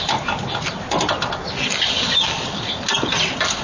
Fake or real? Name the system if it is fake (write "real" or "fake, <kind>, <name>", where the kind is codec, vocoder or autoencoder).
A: real